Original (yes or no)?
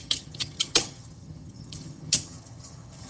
no